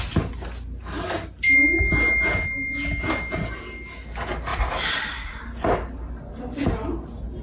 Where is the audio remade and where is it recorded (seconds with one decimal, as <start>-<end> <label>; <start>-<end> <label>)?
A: 0.0-7.4 recorded